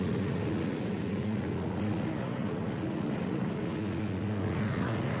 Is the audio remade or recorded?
remade